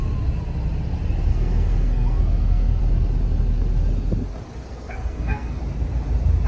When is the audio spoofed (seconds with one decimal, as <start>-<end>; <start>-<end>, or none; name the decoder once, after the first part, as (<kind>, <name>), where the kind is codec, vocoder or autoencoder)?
1.3-2.8 (codec, SNAC); 4.7-5.6